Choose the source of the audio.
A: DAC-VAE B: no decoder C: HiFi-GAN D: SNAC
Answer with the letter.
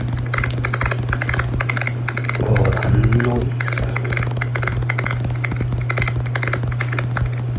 B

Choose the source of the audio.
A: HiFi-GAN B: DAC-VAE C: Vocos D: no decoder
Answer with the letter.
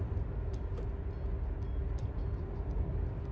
D